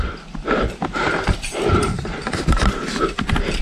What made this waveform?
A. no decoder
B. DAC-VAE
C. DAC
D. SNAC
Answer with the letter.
A